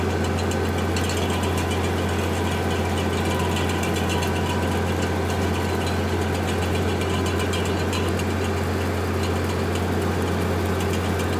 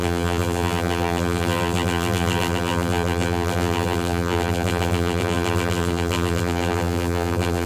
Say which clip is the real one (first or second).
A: first